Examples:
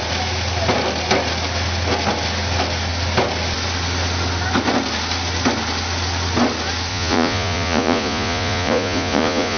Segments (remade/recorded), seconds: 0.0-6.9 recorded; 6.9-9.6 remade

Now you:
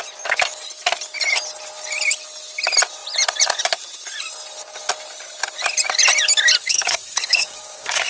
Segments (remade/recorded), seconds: 0.0-6.6 recorded; 6.6-8.1 remade

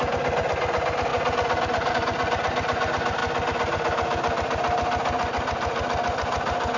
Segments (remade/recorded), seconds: 0.0-6.8 recorded

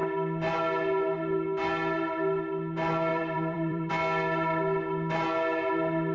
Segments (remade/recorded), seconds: 0.0-3.1 recorded; 3.1-3.9 remade; 3.9-6.1 recorded

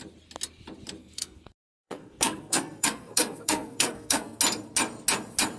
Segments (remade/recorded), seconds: 0.0-1.0 recorded; 1.0-4.4 remade; 4.4-5.6 recorded

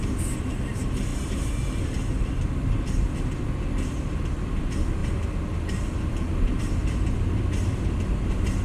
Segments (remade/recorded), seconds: 0.0-1.1 recorded; 1.1-3.2 remade; 3.2-8.6 recorded

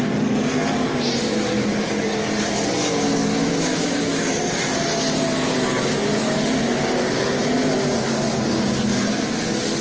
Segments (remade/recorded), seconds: 0.0-3.2 recorded; 3.2-4.4 remade; 4.4-9.8 recorded